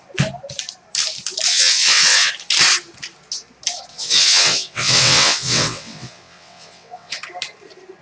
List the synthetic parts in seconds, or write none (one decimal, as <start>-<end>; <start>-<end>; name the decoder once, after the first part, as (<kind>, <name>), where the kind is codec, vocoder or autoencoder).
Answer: 1.5-2.3 (vocoder, WaveNeXt); 3.9-7.1